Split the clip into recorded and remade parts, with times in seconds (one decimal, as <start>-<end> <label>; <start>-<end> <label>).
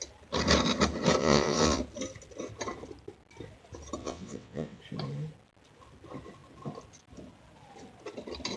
0.0-1.2 recorded; 1.2-1.8 remade; 1.8-4.0 recorded; 4.0-4.8 remade; 4.8-8.6 recorded